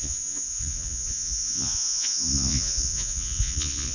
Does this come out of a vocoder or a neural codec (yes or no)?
yes